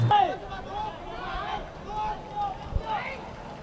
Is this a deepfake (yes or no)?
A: no